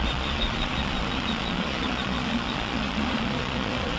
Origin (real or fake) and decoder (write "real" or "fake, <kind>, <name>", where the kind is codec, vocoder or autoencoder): fake, vocoder, Vocos